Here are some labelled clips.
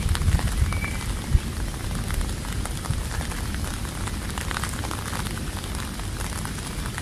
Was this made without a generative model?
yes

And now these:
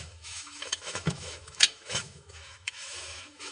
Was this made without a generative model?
no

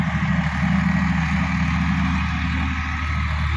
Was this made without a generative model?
yes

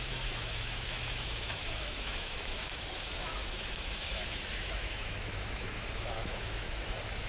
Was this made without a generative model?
no